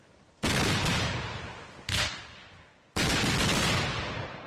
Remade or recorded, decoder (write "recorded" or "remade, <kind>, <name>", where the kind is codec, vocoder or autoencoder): recorded